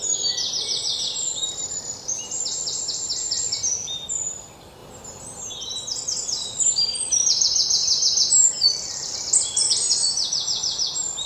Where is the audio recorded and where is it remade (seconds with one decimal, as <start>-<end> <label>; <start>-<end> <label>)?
0.0-3.1 remade; 3.1-4.1 recorded; 4.1-4.8 remade; 4.8-5.4 recorded; 5.4-7.8 remade; 7.8-9.1 recorded; 9.1-11.3 remade